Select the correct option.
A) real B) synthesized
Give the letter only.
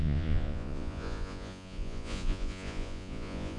B